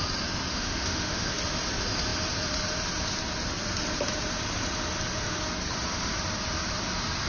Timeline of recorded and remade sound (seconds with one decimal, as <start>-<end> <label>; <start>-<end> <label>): 0.0-0.5 recorded; 0.5-1.4 remade; 1.4-7.3 recorded